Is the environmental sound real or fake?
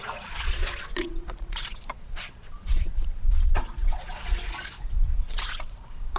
fake